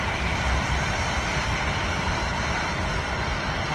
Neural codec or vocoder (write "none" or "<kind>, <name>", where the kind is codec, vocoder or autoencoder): none